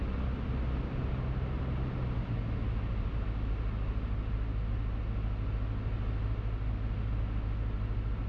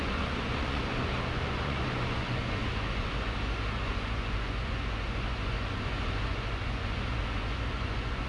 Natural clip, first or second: first